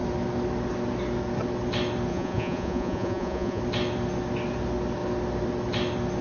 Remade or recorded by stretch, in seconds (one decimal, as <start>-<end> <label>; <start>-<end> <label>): 0.0-2.1 recorded; 2.1-3.6 remade; 3.6-6.2 recorded